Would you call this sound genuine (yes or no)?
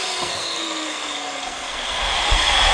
no